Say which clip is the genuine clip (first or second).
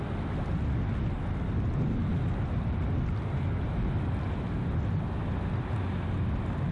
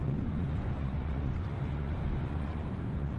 first